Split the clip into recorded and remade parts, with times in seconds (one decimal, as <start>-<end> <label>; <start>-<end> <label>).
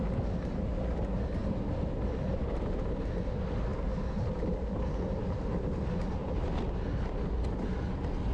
0.0-8.3 recorded